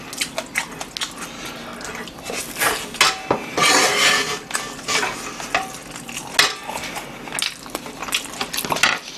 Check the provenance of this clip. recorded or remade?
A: recorded